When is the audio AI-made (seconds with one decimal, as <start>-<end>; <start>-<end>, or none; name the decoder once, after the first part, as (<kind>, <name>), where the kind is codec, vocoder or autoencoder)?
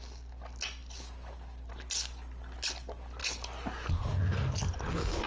none